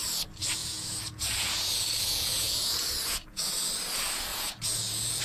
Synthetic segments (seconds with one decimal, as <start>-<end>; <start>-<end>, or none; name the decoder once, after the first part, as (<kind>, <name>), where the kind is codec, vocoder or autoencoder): 0.6-3.7 (vocoder, Vocos); 4.3-5.2